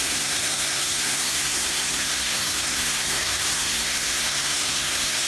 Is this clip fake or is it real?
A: fake